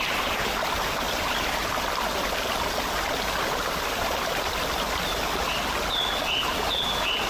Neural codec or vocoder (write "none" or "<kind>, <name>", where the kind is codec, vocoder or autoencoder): none